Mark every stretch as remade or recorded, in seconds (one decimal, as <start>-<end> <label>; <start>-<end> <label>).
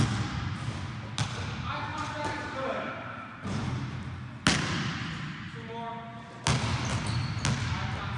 0.0-1.9 recorded; 1.9-4.3 remade; 4.3-8.2 recorded